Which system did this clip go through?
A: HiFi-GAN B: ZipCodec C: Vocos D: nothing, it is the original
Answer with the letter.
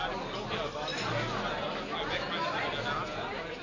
D